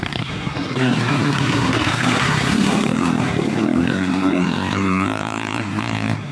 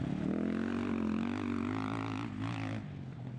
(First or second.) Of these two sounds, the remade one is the first